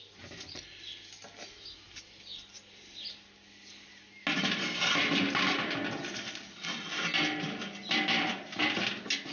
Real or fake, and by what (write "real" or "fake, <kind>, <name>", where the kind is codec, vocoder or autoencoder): real